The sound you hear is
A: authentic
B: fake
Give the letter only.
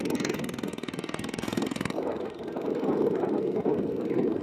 B